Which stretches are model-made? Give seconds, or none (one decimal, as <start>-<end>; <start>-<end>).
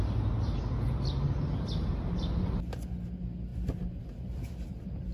none